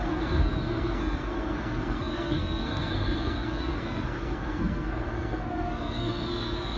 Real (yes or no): no